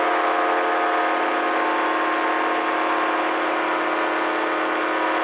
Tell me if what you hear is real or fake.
real